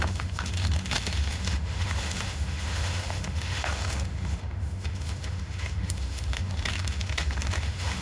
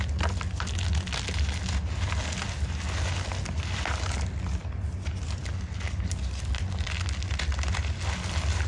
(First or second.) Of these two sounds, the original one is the second